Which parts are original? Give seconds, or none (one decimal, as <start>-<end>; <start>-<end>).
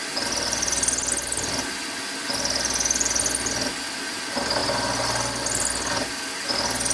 0.0-6.9